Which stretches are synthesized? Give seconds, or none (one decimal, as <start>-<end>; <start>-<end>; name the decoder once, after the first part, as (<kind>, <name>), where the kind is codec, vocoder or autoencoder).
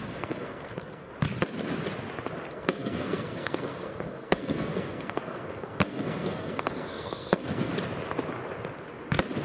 0.0-1.1 (codec, SNAC); 2.5-7.7